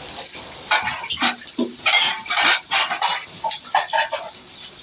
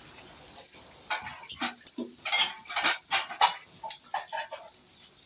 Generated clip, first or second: first